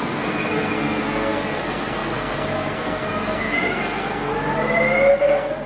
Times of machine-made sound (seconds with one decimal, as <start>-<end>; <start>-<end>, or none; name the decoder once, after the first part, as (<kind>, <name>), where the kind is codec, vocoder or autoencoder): 0.0-4.3 (codec, SNAC); 5.1-5.7